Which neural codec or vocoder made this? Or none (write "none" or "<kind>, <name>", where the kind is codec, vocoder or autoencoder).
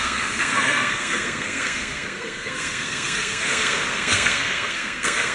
codec, SNAC